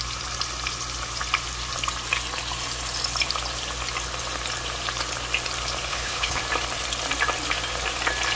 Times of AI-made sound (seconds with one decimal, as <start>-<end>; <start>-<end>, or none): 5.9-6.4